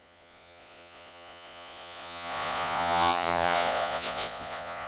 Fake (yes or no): yes